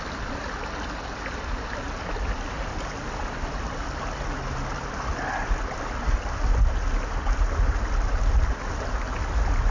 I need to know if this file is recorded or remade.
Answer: recorded